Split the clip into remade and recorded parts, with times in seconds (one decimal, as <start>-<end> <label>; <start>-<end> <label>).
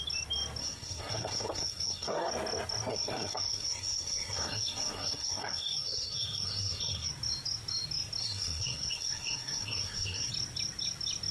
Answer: 0.0-0.6 recorded; 0.6-2.3 remade; 2.3-2.9 recorded; 2.9-7.1 remade; 7.1-8.2 recorded; 8.2-10.3 remade; 10.3-11.3 recorded